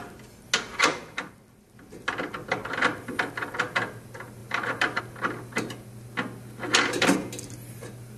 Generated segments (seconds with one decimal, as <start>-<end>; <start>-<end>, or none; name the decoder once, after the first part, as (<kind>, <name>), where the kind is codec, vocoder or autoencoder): 4.4-5.0 (vocoder, BigVGAN v2)